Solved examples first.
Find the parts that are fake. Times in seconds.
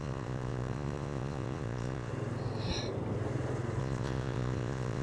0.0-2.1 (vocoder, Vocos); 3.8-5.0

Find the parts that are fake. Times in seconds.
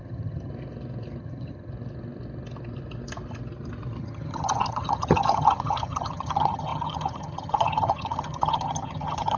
0.0-0.5 (vocoder, HiFi-GAN); 1.2-1.7; 4.0-9.4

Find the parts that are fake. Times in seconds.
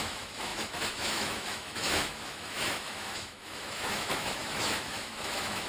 0.0-5.7 (autoencoder, DAC-VAE)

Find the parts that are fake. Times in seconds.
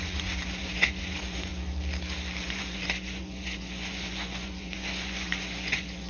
0.0-1.5 (vocoder, Vocos); 2.4-6.1